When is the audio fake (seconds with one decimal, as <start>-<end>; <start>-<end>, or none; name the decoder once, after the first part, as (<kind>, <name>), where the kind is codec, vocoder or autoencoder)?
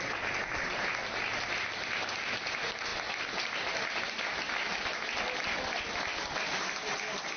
none